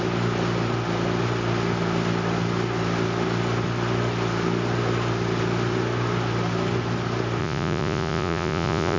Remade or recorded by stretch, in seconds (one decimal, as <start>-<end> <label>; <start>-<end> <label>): 0.0-7.4 recorded; 7.4-9.0 remade